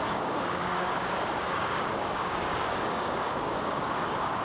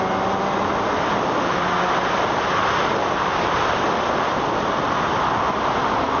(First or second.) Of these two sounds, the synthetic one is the first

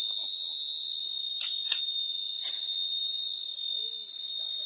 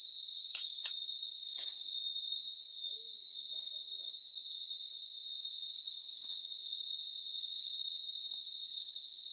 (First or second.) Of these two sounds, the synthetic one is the second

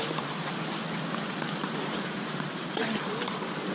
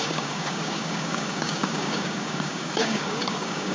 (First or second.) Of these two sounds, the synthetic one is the second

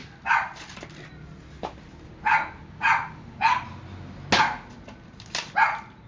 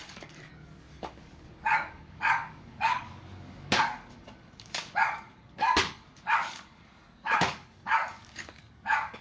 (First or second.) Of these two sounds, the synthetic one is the second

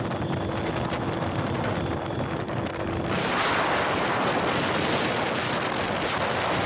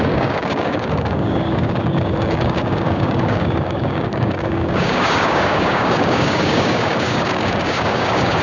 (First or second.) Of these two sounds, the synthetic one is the second